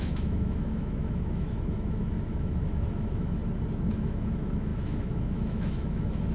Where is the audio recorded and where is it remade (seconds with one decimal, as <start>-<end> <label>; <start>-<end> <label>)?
0.0-3.4 remade; 3.4-3.9 recorded; 3.9-6.3 remade